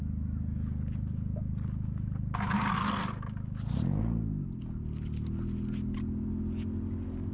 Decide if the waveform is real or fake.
real